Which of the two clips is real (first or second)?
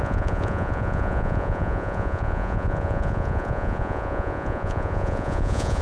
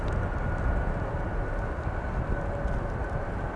second